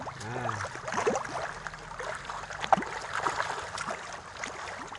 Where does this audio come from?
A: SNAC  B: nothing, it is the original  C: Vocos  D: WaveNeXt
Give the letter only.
B